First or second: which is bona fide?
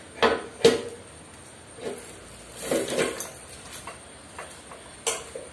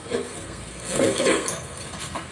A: first